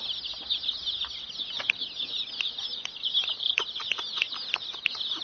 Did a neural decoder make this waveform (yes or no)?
no